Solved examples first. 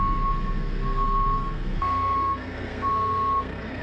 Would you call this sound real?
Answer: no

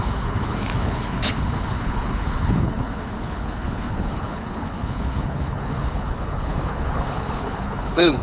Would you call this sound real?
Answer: no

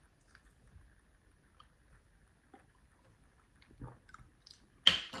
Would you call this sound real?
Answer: yes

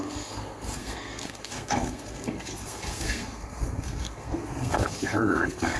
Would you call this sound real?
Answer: no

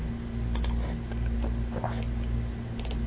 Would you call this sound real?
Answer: yes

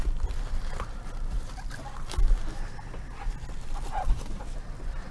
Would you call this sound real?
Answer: no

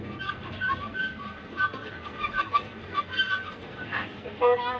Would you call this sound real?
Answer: no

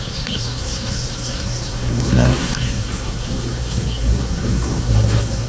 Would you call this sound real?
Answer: no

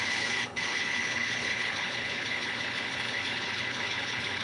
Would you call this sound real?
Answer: no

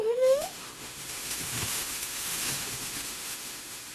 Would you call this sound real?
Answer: no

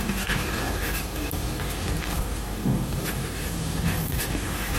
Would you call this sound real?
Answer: no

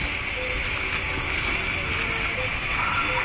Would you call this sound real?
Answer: yes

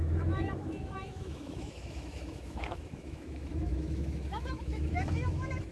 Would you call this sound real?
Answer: no